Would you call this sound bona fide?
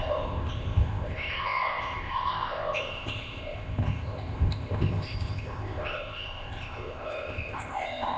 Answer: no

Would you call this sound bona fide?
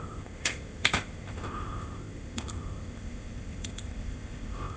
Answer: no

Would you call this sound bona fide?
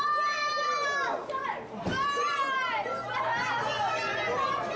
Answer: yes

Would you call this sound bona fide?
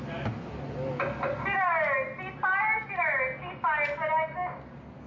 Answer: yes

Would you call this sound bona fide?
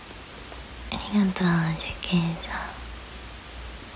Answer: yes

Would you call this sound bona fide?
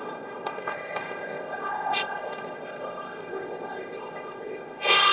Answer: no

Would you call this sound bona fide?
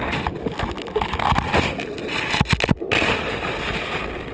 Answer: yes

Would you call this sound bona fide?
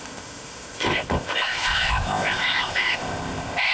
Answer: no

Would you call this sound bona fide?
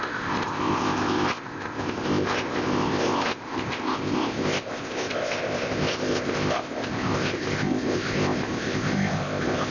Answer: no